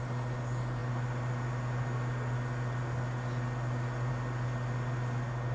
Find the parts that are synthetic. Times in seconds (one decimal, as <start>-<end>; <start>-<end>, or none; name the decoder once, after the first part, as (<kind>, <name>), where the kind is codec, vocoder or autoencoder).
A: none